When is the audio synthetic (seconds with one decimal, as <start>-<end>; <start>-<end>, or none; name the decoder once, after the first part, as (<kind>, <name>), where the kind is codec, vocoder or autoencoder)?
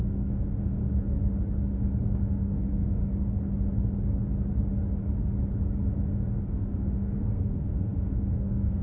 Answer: 0.0-0.8 (codec, SNAC); 2.0-3.0; 6.4-8.8